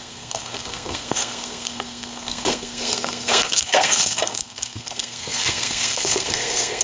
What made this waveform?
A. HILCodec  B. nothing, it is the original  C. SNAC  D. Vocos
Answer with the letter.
C